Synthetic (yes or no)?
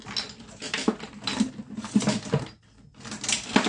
no